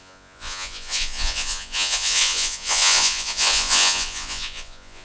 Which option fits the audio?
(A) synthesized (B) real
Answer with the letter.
A